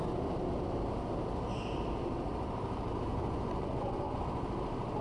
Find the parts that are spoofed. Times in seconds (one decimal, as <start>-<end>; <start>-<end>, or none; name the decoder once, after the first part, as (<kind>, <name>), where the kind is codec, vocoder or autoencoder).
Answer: 3.1-4.2 (vocoder, Vocos)